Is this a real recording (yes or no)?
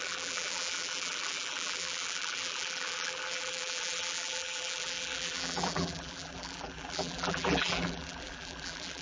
no